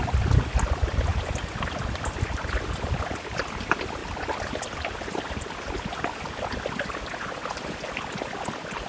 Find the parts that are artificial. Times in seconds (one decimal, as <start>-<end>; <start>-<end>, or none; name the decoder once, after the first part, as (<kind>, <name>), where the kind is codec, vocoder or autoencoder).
none